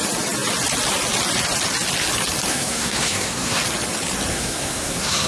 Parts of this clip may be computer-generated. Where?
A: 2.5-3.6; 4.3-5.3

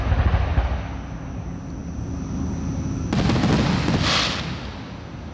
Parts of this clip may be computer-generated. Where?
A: none

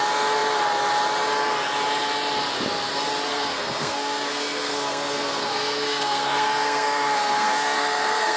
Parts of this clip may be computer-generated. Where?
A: 3.3-8.4

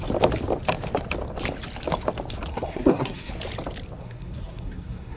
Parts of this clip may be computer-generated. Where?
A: 2.5-3.3; 4.0-5.2

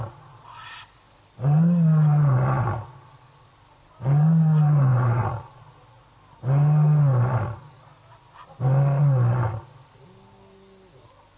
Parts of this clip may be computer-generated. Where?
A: none